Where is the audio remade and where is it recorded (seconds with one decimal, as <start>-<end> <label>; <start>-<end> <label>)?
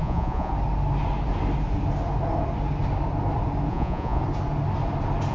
0.0-0.5 remade; 0.5-3.7 recorded; 3.7-4.2 remade; 4.2-5.3 recorded